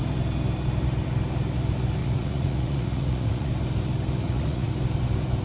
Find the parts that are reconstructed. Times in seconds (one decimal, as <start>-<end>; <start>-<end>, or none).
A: 2.0-3.5; 4.2-4.7